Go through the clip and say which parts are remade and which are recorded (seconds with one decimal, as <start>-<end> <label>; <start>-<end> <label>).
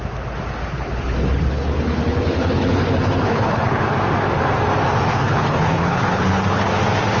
0.0-0.7 recorded; 0.7-3.8 remade; 3.8-5.1 recorded; 5.1-6.7 remade; 6.7-7.2 recorded